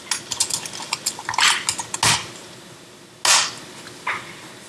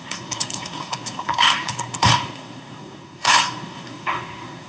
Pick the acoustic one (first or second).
first